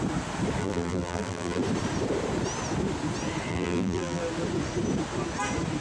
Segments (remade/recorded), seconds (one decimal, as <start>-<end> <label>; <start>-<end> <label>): 0.0-0.6 recorded; 0.6-1.6 remade; 1.6-3.5 recorded; 3.5-4.2 remade; 4.2-5.8 recorded